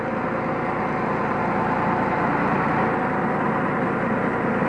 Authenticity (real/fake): real